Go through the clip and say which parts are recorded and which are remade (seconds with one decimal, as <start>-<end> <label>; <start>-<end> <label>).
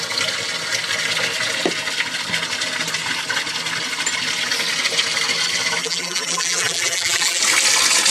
0.0-5.8 recorded; 5.8-7.4 remade; 7.4-8.1 recorded